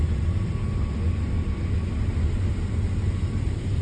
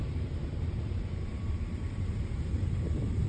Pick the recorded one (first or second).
first